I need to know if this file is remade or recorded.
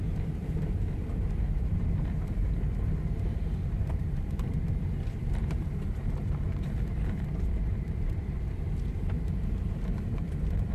remade